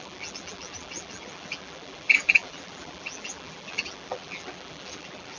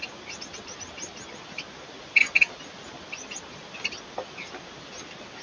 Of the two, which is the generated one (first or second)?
first